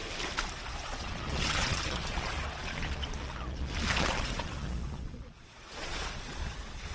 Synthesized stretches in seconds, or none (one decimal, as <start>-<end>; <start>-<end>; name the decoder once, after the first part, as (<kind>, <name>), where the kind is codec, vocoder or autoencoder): 0.7-6.9 (vocoder, Vocos)